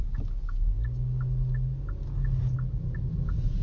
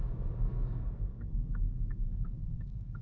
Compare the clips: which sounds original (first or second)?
first